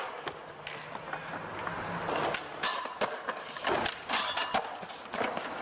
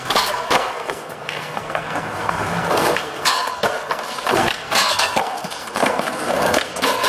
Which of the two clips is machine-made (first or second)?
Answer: second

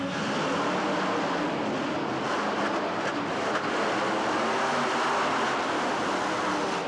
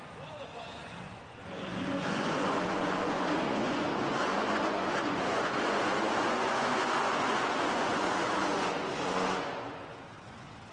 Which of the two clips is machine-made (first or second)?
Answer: second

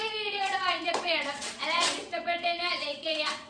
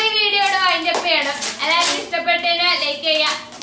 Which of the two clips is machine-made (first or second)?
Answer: first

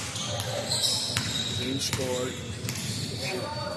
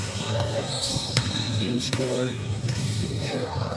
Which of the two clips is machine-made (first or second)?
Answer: second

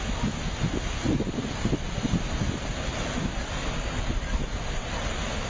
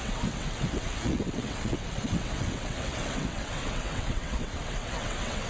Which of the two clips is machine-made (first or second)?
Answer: second